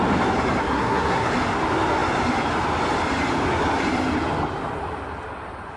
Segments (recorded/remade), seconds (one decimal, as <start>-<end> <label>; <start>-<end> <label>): 0.0-0.6 recorded; 0.6-1.3 remade; 1.3-5.8 recorded